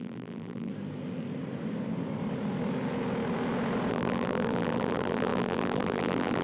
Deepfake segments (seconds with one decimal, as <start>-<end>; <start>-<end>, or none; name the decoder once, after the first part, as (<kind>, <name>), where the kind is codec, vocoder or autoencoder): 0.0-0.7 (vocoder, BigVGAN v2); 3.9-6.4